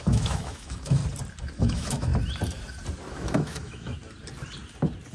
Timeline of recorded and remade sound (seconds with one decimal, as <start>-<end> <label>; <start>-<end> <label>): 0.0-1.0 remade; 1.0-1.6 recorded; 1.6-2.1 remade; 2.1-3.1 recorded; 3.1-4.0 remade; 4.0-5.1 recorded